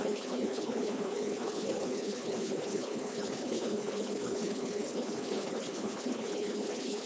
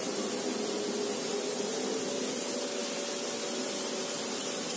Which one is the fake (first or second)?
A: first